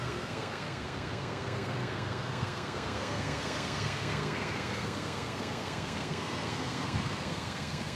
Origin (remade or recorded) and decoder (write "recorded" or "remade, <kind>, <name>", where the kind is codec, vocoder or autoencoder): remade, codec, SNAC